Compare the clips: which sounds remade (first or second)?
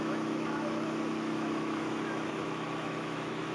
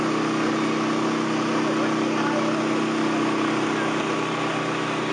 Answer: first